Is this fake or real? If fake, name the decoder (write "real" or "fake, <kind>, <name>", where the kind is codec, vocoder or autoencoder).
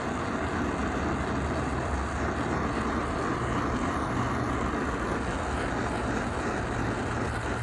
real